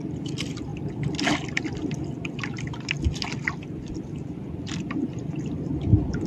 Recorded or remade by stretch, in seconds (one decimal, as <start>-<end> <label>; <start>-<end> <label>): 0.0-0.7 remade; 0.7-3.9 recorded; 3.9-5.0 remade; 5.0-5.7 recorded; 5.7-6.3 remade